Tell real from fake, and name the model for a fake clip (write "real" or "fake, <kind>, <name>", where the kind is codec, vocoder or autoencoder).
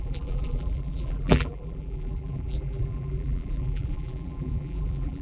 fake, vocoder, BigVGAN v2